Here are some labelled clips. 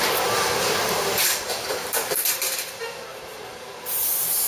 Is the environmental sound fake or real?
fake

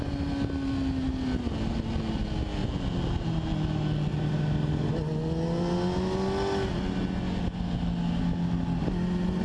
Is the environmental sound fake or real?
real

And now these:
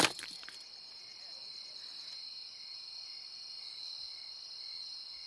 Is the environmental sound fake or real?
real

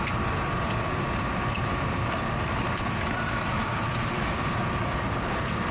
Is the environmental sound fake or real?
real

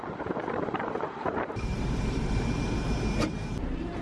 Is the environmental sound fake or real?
fake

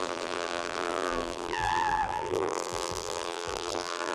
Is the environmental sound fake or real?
fake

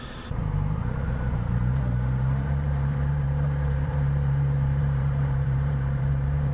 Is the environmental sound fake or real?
fake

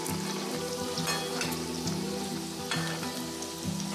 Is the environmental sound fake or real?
real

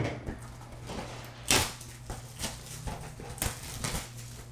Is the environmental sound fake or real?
real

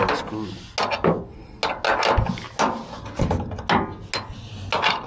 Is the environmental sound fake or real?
real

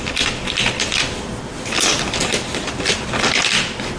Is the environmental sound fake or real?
fake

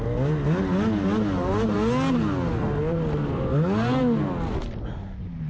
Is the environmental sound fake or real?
real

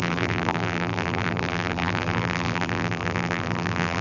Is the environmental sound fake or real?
fake